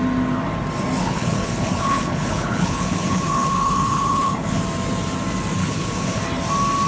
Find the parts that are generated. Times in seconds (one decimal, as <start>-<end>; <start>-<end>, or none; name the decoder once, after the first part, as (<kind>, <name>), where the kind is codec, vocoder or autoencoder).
1.0-4.6 (codec, HILCodec); 5.6-6.2